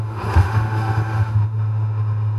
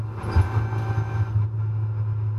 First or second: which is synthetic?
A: first